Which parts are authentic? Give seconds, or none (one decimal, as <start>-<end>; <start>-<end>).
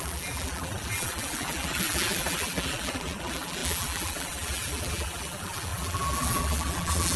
none